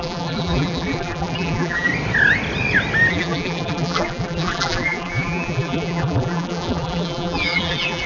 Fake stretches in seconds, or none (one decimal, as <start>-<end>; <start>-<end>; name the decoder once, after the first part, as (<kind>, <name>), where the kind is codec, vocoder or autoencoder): 0.0-1.9 (vocoder, BigVGAN v2); 3.1-8.1